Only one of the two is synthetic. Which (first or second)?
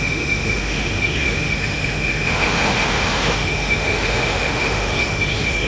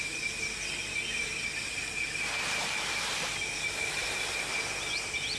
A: first